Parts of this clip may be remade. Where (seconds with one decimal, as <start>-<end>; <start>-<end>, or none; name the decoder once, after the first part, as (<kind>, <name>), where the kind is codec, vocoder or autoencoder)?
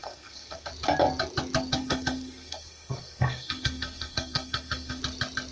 0.0-0.7 (codec, SNAC); 1.7-5.0